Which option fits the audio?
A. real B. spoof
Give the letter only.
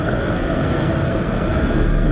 B